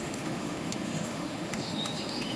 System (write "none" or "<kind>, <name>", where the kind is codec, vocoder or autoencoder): autoencoder, DAC-VAE